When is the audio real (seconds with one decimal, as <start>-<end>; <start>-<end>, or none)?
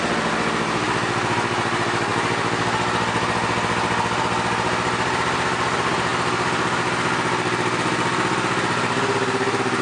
0.0-9.8